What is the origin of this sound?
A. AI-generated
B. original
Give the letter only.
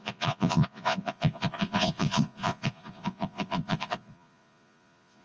A